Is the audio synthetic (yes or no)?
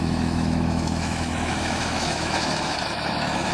yes